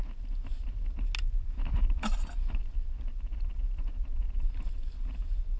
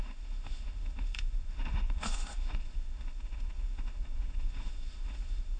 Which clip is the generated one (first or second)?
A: second